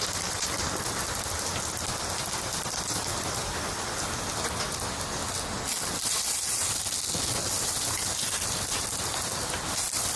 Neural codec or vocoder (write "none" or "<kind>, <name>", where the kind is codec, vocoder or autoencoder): none